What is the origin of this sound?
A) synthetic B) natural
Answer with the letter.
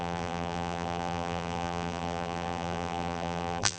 A